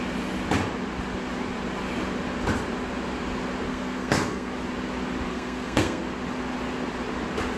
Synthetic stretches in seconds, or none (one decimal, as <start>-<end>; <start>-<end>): 3.7-4.5; 5.3-6.0